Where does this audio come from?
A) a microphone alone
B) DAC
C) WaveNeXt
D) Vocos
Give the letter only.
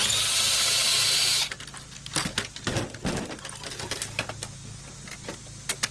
A